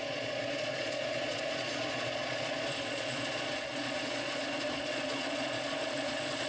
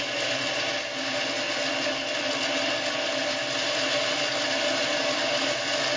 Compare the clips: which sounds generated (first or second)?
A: first